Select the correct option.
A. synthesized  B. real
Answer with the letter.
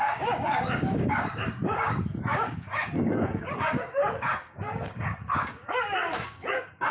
A